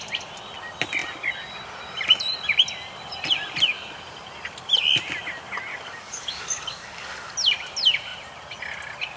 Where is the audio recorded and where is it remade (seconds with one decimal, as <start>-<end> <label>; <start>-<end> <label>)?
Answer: 0.0-5.7 recorded; 5.7-7.3 remade; 7.3-9.2 recorded

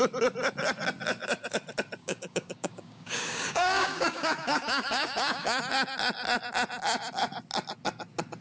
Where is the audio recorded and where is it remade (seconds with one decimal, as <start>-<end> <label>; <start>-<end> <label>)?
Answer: 0.0-2.0 recorded; 2.0-5.6 remade; 5.6-8.4 recorded

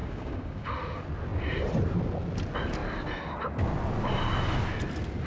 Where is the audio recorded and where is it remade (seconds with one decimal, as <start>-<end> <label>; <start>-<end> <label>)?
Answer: 0.0-0.7 remade; 0.7-5.3 recorded